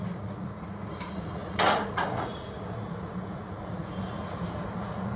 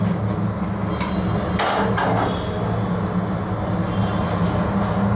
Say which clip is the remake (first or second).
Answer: first